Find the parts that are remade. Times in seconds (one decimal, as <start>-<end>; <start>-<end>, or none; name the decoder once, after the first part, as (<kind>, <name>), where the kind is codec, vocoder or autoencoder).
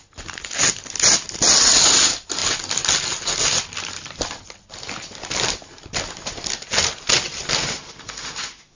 7.6-8.8 (autoencoder, DAC-VAE)